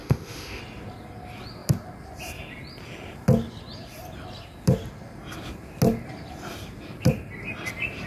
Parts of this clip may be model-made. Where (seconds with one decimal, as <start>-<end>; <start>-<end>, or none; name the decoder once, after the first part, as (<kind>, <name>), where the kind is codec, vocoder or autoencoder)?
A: 0.0-0.6 (autoencoder, DAC-VAE)